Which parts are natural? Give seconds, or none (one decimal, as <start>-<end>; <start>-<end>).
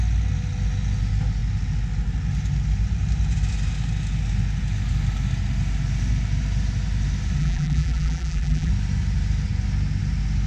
0.0-7.4; 8.7-10.5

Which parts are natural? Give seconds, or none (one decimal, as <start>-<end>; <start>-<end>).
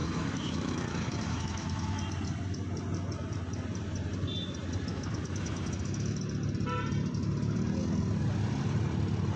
2.0-4.9; 6.2-9.4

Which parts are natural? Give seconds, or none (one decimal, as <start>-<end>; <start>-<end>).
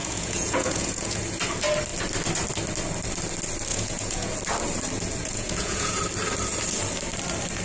1.2-3.7; 4.3-5.2; 6.0-7.6